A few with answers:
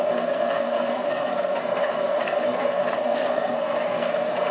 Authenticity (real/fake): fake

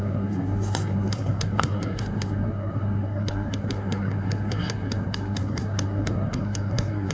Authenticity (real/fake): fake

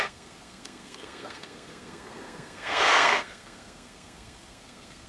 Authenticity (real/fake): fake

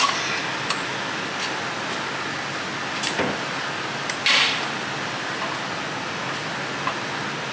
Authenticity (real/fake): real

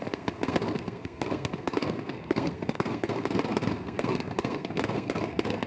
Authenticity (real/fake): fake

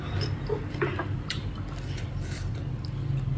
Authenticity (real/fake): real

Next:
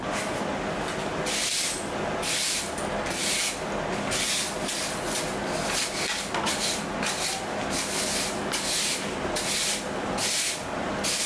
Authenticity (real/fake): real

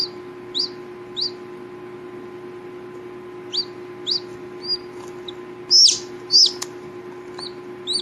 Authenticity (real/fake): real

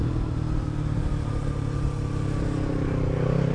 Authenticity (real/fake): real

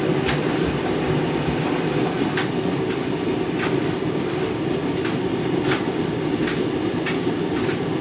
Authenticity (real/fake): real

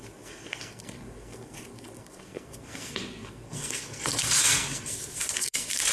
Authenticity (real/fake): fake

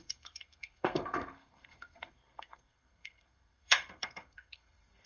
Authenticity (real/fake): fake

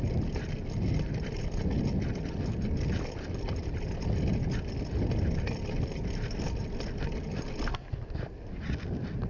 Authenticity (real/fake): real